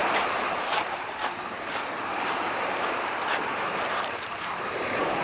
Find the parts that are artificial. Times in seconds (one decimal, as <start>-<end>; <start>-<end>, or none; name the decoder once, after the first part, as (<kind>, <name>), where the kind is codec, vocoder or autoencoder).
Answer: 0.0-5.2 (vocoder, BigVGAN v2)